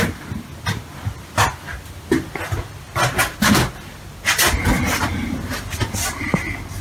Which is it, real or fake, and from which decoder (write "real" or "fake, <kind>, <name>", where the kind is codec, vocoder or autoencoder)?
real